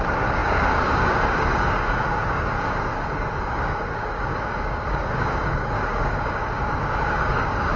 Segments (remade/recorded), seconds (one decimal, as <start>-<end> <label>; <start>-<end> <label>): 0.0-7.8 remade